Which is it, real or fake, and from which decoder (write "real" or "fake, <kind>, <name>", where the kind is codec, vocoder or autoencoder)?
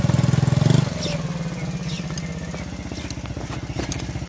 real